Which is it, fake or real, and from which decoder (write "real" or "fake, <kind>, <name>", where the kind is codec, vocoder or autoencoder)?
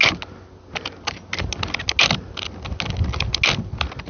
real